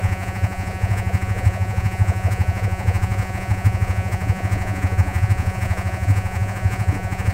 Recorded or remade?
remade